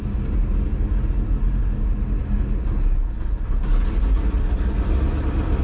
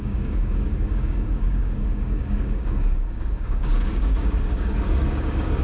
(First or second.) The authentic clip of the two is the first